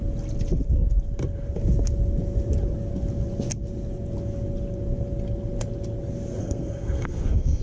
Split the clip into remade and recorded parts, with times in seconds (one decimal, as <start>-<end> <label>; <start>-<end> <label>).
0.0-6.4 recorded; 6.4-7.6 remade